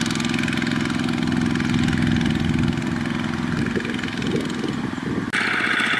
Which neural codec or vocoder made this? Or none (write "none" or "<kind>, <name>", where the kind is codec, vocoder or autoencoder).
none